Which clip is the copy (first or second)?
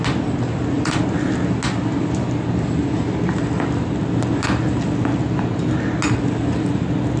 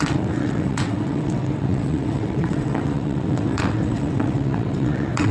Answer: second